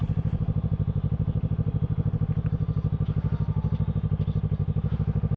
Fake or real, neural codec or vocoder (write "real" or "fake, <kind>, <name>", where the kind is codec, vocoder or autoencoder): real